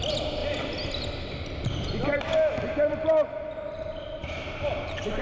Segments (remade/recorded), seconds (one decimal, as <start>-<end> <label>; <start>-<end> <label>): 0.0-4.2 recorded; 4.2-5.2 remade